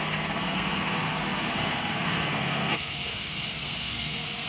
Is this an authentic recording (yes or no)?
no